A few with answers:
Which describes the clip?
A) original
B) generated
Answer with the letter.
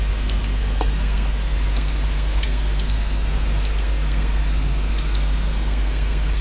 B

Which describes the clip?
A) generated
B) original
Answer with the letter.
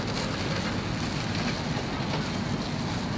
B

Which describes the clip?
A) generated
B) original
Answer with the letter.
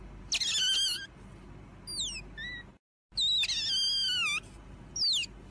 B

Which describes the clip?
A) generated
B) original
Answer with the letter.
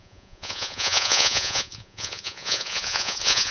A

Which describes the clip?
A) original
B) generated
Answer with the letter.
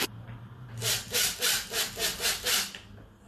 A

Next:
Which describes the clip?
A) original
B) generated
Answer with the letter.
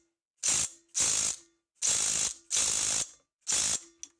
A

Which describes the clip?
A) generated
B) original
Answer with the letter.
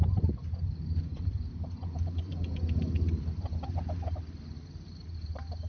A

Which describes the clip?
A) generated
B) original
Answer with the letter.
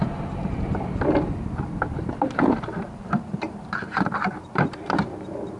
A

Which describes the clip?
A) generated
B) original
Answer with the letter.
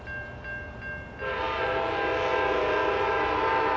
B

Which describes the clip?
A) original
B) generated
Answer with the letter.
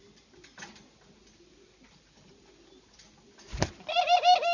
A